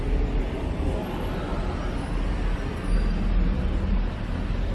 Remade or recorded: recorded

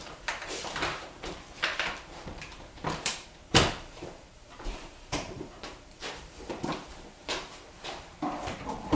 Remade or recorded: remade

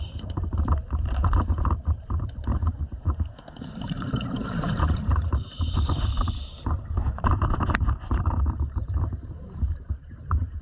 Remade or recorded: remade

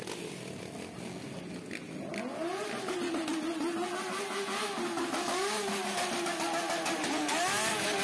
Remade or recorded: recorded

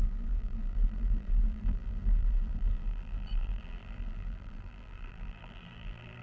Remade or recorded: remade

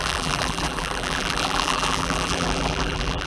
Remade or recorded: remade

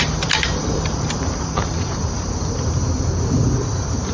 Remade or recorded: remade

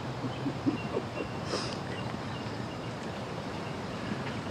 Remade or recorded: remade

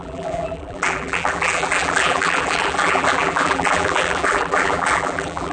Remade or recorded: remade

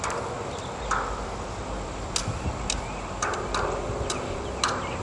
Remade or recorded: recorded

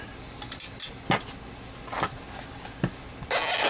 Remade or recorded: recorded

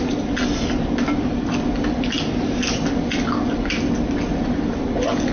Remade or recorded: recorded